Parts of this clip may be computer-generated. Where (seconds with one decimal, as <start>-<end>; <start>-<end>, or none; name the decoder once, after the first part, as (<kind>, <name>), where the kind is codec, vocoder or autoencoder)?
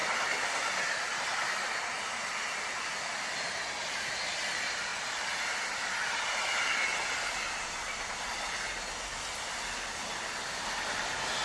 none